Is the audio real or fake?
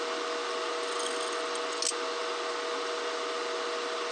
real